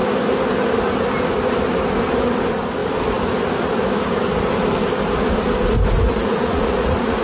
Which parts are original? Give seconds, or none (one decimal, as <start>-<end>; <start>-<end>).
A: 0.0-6.1